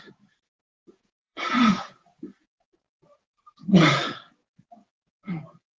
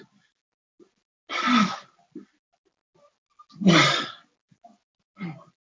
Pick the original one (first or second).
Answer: second